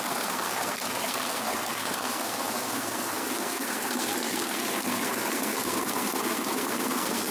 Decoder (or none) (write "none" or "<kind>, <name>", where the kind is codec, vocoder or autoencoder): codec, SNAC